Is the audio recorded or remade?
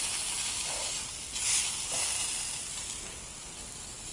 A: recorded